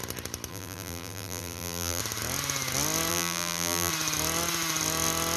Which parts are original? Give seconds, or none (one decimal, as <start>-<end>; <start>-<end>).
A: 0.0-0.5; 2.0-3.1; 3.9-5.4